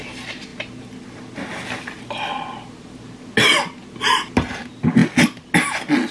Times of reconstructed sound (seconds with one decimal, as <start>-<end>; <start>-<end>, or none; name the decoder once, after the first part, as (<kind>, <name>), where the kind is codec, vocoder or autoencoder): none